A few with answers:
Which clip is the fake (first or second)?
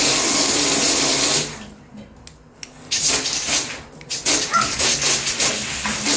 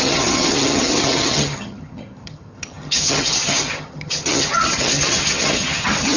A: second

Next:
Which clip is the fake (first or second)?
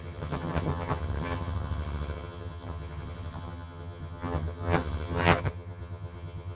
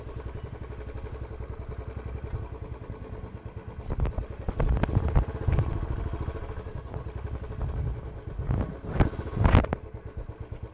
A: first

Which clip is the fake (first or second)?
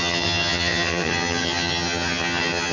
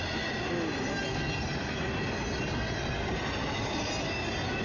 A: first